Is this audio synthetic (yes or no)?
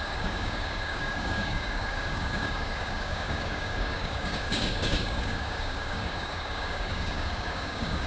yes